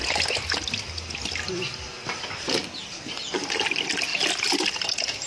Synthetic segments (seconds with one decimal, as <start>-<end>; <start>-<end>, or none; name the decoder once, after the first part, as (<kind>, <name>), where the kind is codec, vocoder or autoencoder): none